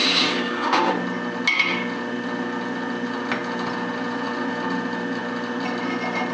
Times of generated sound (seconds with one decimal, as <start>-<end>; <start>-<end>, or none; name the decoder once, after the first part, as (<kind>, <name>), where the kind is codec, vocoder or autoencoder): 0.0-0.9 (codec, DAC)